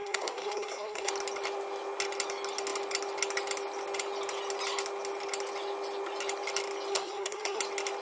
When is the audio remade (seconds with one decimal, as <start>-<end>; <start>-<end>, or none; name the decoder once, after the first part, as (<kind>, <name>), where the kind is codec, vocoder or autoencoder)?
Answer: 0.0-1.1 (codec, SNAC); 6.9-7.6